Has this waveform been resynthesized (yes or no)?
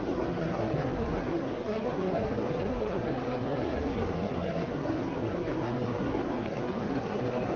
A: yes